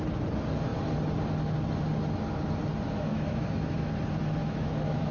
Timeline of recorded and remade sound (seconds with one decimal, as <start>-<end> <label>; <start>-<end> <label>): 0.0-3.1 recorded; 3.1-3.9 remade; 3.9-4.4 recorded; 4.4-5.1 remade